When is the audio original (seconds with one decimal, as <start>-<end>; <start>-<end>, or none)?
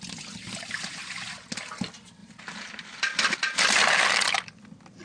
0.0-0.9; 1.5-2.2; 4.0-5.0